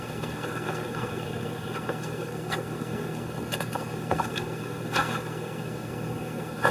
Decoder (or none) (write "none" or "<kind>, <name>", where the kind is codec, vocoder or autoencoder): codec, SNAC